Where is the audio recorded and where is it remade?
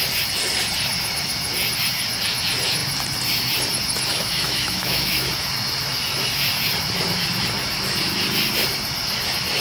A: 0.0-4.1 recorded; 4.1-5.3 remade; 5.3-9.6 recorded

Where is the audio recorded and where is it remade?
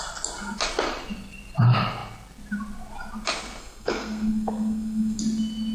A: 0.0-3.6 recorded; 3.6-5.2 remade; 5.2-5.7 recorded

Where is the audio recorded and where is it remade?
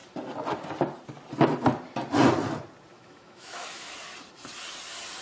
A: 0.0-2.9 recorded; 2.9-3.9 remade; 3.9-5.2 recorded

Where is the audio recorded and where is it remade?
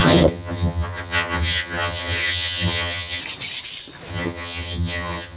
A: 0.0-3.2 remade; 3.2-4.1 recorded; 4.1-5.4 remade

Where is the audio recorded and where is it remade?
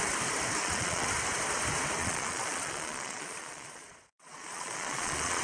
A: 0.0-0.6 recorded; 0.6-1.1 remade; 1.1-2.0 recorded; 2.0-5.4 remade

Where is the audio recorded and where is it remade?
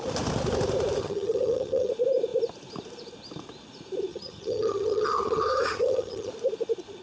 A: 0.0-1.0 recorded; 1.0-1.9 remade; 1.9-4.1 recorded; 4.1-6.3 remade; 6.3-7.0 recorded